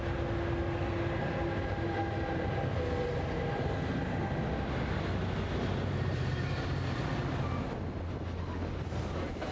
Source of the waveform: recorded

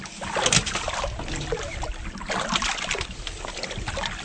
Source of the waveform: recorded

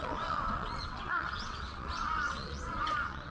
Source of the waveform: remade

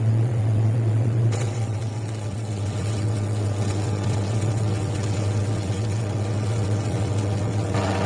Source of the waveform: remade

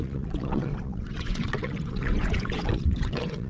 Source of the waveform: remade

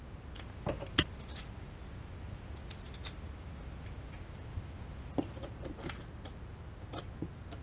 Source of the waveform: recorded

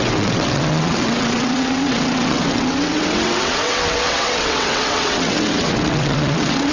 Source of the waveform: remade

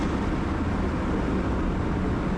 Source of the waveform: recorded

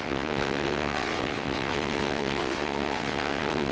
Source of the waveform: remade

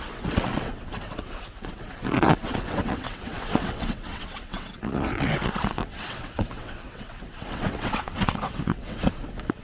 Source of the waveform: remade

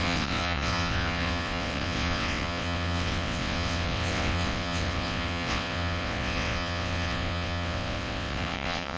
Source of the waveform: remade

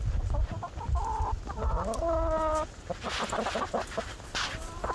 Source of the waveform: recorded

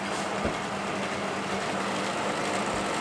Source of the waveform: recorded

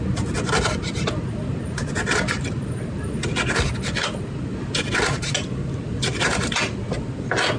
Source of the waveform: recorded